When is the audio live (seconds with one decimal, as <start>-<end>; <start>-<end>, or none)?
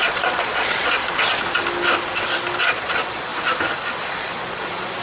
1.0-2.6; 3.3-4.1